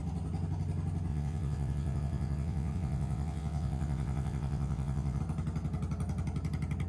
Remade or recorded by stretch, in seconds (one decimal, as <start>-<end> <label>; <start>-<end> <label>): 0.0-1.1 recorded; 1.1-5.2 remade; 5.2-6.9 recorded